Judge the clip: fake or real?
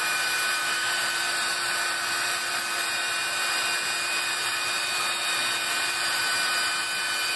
fake